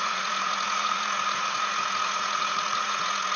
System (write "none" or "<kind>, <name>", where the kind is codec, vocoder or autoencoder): vocoder, Vocos